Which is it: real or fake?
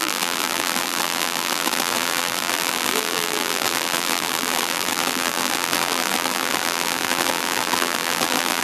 fake